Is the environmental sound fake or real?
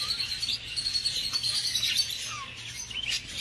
real